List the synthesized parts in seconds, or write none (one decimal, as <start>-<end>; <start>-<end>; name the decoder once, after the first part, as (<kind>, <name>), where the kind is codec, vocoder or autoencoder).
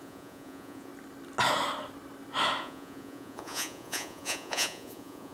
0.0-0.9 (vocoder, Vocos); 2.6-5.3